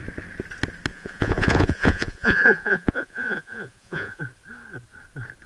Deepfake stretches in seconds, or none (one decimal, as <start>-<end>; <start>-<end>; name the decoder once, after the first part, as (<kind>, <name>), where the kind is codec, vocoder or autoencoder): 0.9-4.2 (vocoder, Vocos)